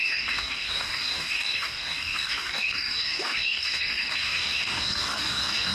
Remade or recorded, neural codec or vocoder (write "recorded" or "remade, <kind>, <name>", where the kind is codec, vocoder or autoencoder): remade, codec, DAC